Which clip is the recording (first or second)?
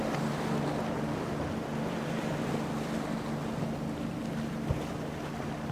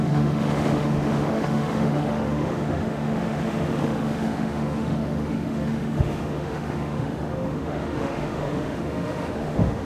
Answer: first